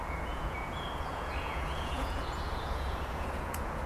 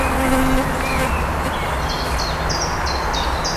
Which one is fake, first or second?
first